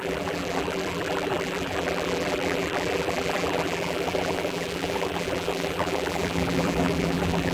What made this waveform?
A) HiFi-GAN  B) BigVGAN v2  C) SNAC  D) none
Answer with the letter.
B